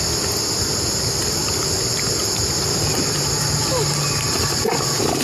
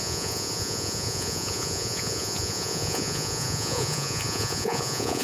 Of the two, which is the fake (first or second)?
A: second